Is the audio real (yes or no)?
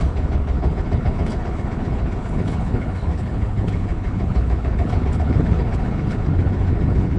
no